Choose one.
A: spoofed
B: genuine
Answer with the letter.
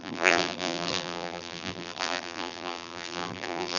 A